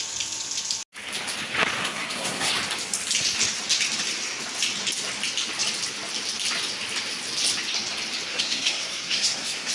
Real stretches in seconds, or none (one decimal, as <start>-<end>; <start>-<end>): 0.0-1.8; 2.5-8.3